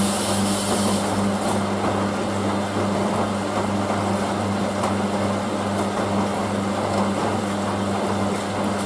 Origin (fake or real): real